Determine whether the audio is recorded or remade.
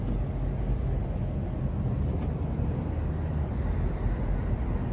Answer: recorded